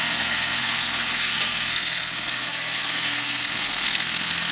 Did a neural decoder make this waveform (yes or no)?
yes